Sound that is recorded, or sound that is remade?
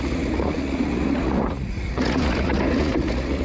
remade